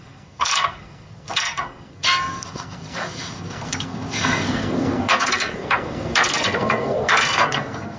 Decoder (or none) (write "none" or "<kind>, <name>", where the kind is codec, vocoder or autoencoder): codec, SNAC